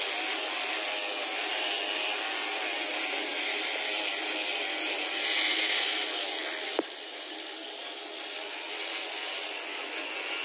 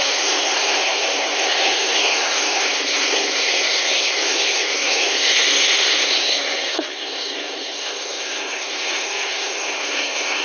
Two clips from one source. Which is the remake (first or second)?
second